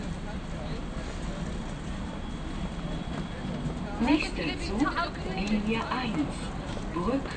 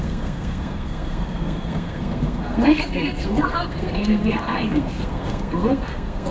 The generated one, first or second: second